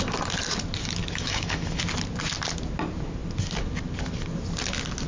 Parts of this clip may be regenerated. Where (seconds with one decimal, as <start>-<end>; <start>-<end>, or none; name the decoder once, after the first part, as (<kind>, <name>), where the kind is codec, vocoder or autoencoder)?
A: 1.0-1.8 (autoencoder, DAC-VAE)